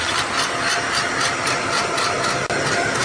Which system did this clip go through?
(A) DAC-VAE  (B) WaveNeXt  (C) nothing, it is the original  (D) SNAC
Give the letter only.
C